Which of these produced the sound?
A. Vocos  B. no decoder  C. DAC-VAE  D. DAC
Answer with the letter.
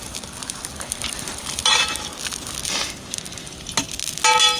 B